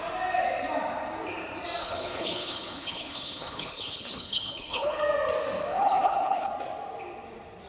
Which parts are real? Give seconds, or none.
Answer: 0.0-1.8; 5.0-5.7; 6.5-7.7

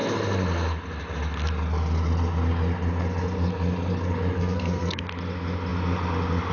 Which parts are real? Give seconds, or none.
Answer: 0.0-4.4; 5.0-6.5

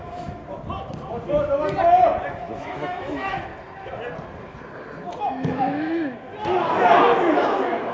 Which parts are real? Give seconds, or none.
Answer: 0.4-2.3; 3.5-5.2; 6.3-7.3

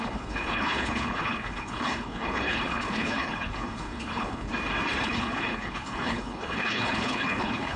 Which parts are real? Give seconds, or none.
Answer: 4.5-5.0

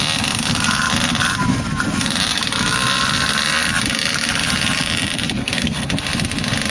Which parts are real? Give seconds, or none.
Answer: 0.0-5.4; 5.9-6.7

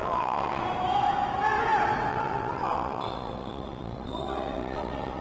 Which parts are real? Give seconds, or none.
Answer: 0.6-2.1

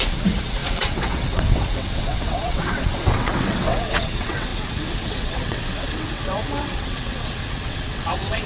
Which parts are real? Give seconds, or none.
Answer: none

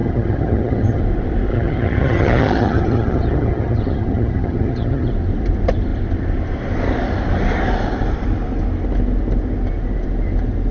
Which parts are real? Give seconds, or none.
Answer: 1.0-1.5; 5.1-10.7